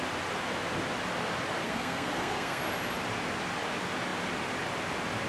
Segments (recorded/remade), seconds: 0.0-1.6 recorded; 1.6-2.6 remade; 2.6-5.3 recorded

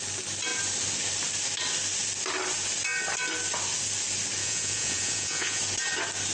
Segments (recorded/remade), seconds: 0.0-4.4 recorded; 4.4-5.6 remade; 5.6-6.3 recorded

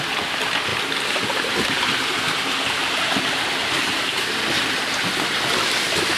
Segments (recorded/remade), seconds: 0.0-6.2 recorded